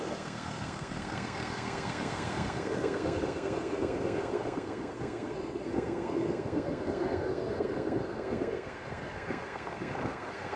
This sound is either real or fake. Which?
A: fake